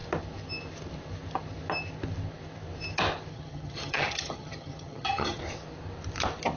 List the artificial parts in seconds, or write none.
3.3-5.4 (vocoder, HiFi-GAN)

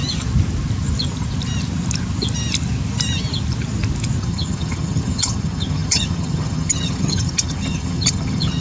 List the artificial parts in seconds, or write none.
4.2-8.6 (vocoder, HiFi-GAN)

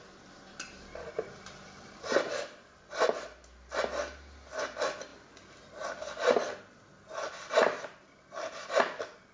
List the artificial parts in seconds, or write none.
none

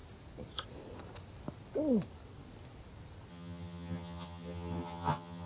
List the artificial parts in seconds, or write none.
3.3-5.5 (vocoder, HiFi-GAN)

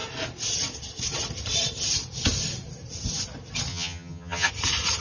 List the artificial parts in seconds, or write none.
3.7-4.5 (vocoder, HiFi-GAN)

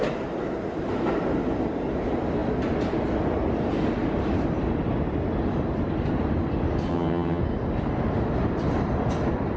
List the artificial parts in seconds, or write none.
6.9-7.4 (vocoder, HiFi-GAN)

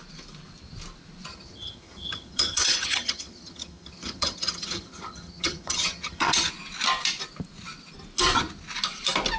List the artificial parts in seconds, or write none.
1.3-6.5 (vocoder, HiFi-GAN)

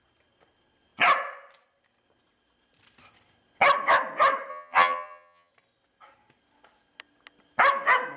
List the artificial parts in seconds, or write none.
4.5-5.5 (vocoder, HiFi-GAN)